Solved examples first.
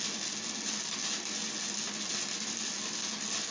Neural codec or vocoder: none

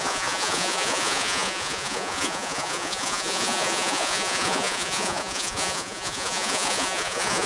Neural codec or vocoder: vocoder, Vocos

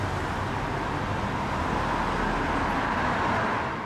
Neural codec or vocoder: none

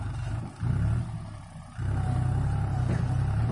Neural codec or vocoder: none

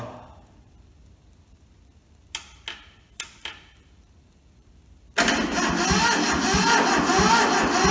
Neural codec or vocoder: none